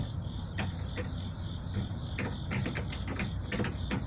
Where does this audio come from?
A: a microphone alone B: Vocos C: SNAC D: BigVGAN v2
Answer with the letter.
A